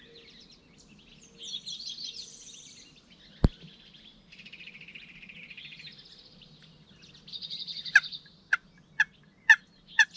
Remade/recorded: recorded